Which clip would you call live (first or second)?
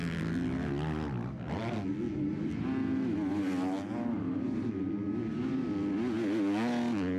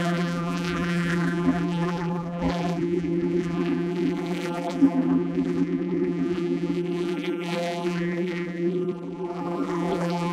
first